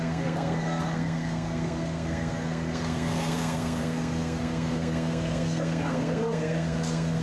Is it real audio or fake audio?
fake